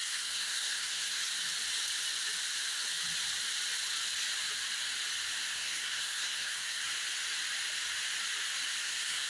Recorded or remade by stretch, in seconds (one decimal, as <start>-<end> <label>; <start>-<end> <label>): 0.0-1.2 remade; 1.2-5.5 recorded; 5.5-6.8 remade; 6.8-8.8 recorded; 8.8-9.3 remade